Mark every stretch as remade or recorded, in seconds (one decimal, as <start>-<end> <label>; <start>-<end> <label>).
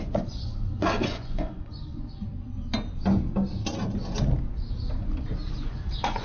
0.0-2.3 remade; 2.3-5.6 recorded; 5.6-6.2 remade